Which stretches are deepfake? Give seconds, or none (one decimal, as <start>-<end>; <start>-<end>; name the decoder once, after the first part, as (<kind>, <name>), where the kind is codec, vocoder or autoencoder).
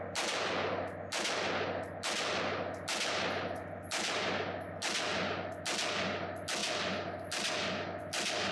none